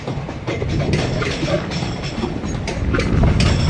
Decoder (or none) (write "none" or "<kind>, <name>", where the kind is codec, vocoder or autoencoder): vocoder, BigVGAN v2